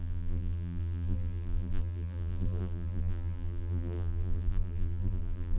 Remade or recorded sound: remade